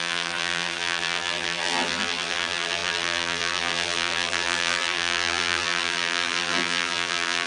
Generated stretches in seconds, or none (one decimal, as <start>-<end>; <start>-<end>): 0.0-7.5